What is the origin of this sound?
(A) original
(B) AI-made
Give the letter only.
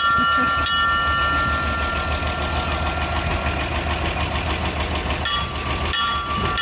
A